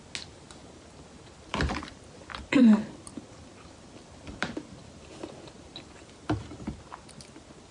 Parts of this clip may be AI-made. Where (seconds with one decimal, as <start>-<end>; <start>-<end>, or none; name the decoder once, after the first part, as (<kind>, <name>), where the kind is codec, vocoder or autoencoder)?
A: 1.5-5.7 (vocoder, BigVGAN v2)